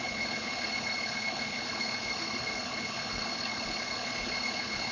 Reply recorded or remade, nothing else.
remade